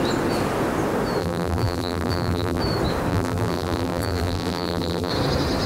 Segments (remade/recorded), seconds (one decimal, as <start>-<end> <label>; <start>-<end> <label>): 0.0-1.2 recorded; 1.2-2.6 remade; 2.6-3.1 recorded; 3.1-5.1 remade; 5.1-5.7 recorded